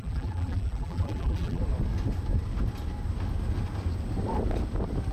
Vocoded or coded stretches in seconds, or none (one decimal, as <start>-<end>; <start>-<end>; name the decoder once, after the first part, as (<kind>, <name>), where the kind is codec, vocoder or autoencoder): 0.0-1.6 (vocoder, BigVGAN v2)